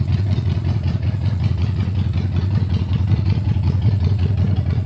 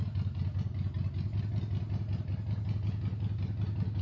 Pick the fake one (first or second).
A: first